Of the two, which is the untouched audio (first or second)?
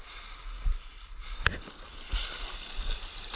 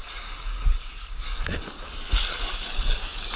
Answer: first